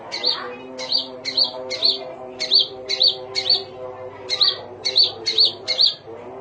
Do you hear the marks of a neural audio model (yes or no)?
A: no